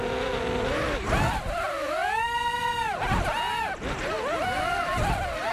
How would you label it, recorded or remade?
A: recorded